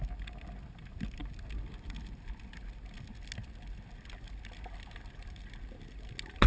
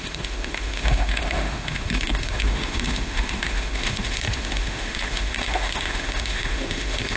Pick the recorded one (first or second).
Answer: first